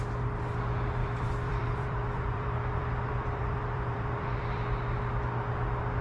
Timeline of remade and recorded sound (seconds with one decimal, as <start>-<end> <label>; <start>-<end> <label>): 0.0-1.0 recorded; 1.0-4.6 remade; 4.6-6.0 recorded